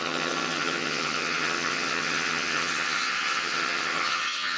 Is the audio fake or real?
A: fake